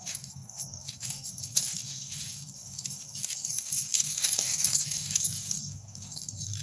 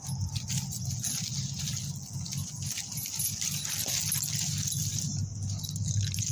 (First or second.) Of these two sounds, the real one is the second